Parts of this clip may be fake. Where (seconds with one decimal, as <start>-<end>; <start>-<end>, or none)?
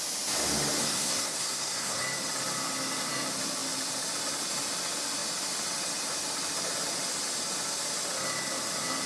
0.8-2.0